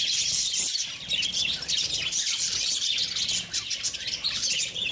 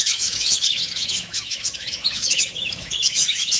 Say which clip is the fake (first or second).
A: second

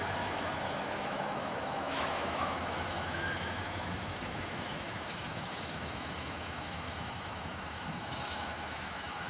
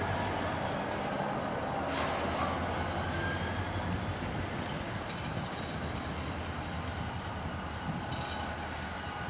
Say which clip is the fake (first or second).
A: first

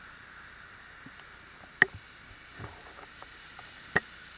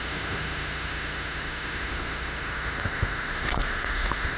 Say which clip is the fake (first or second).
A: second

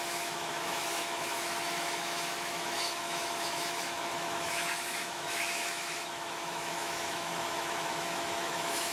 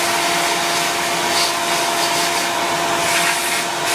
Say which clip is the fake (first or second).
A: first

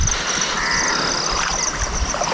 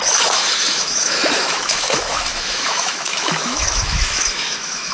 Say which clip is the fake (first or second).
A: second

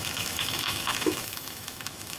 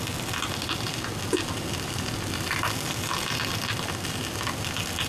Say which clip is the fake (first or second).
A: first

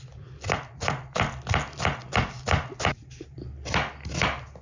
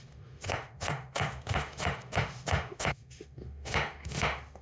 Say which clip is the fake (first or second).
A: second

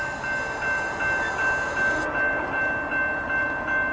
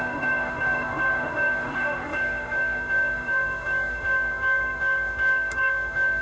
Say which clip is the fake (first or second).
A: second